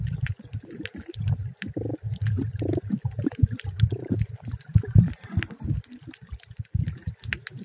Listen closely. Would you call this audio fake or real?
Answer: real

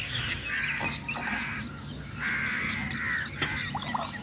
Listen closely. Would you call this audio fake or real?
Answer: real